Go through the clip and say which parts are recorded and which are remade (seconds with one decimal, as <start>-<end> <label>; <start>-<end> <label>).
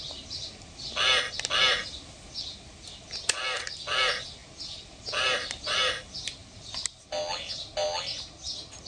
0.0-8.9 recorded